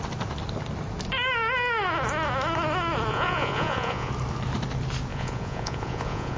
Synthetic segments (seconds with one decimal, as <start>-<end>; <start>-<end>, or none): 3.1-4.1; 5.1-6.4